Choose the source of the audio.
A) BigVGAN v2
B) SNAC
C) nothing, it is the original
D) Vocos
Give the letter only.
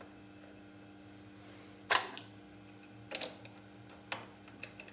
C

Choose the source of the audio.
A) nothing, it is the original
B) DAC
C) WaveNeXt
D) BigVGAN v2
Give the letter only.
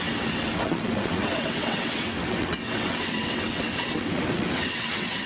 C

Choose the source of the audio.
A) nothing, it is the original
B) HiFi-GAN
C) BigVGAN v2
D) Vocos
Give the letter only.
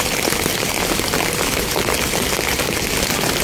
A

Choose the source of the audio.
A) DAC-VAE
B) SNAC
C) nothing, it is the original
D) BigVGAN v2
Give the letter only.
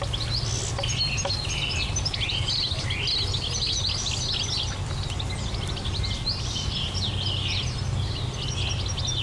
C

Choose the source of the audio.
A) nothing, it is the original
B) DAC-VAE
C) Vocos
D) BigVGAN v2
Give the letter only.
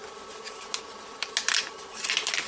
A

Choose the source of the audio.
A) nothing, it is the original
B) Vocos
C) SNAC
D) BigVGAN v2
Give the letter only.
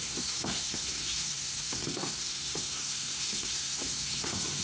C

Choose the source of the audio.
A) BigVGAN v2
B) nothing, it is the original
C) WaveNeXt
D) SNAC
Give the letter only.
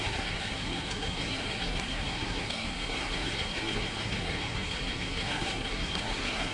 D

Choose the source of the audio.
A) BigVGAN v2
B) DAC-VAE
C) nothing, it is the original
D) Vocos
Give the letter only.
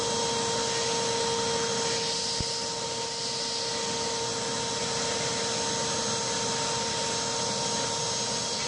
C